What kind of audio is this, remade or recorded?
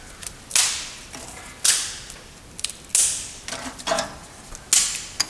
recorded